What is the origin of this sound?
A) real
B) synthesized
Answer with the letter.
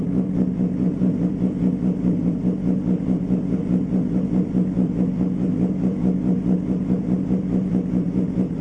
A